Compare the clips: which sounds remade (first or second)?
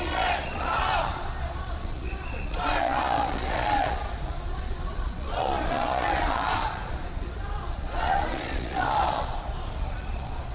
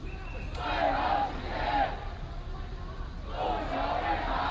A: first